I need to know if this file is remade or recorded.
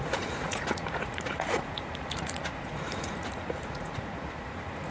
remade